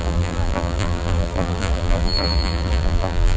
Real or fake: fake